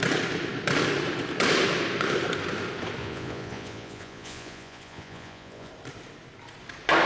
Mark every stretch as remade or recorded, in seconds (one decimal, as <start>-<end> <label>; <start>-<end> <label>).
0.0-3.0 recorded; 3.0-5.7 remade; 5.7-7.1 recorded